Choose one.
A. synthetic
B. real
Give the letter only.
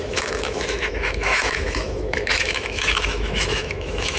A